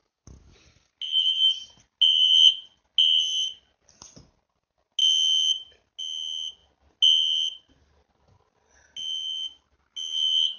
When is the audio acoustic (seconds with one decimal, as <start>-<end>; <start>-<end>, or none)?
0.0-10.6